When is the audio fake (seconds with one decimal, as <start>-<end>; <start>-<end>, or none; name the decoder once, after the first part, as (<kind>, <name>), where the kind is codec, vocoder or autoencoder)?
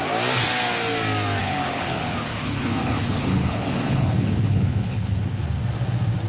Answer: 1.4-5.2 (codec, HILCodec)